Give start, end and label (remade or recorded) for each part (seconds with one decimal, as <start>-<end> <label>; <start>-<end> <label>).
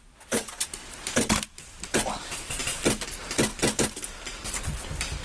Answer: 0.0-5.2 recorded